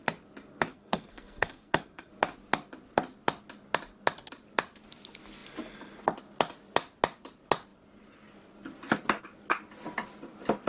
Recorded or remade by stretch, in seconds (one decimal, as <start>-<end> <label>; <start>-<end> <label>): 0.0-0.7 recorded; 0.7-2.1 remade; 2.1-10.7 recorded